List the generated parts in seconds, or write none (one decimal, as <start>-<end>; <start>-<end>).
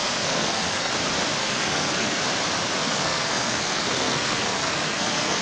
0.0-0.9; 1.4-2.2; 2.8-5.4